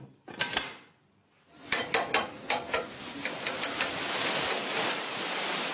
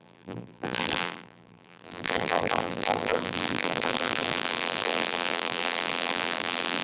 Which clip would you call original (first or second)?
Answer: first